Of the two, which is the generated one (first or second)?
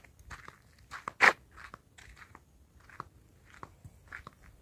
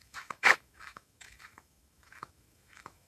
second